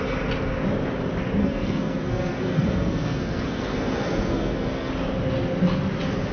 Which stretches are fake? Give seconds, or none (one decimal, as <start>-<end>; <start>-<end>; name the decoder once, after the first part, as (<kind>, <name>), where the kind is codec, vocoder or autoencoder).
1.4-4.9 (codec, SNAC)